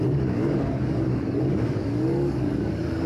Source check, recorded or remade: remade